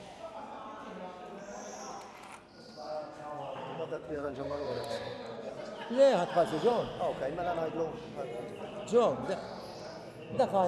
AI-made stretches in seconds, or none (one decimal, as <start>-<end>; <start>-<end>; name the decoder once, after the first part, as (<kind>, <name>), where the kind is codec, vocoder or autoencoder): 3.6-5.5 (codec, SNAC)